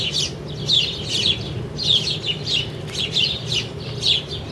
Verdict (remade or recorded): recorded